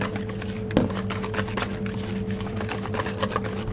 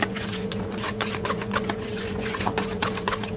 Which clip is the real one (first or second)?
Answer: first